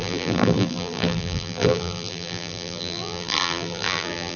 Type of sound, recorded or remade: remade